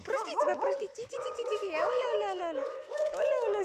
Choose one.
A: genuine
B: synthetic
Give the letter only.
B